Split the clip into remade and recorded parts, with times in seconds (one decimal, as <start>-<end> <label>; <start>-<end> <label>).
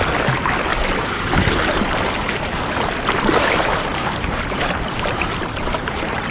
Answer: 0.0-0.7 recorded; 0.7-2.4 remade; 2.4-3.9 recorded; 3.9-6.3 remade